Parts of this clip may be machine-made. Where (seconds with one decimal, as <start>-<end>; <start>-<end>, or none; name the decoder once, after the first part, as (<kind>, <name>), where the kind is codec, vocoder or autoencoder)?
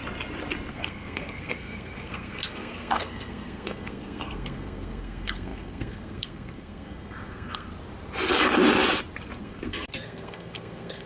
0.7-7.7 (codec, SNAC); 9.4-11.1